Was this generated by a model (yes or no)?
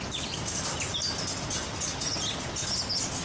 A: no